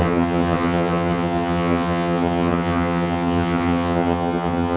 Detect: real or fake fake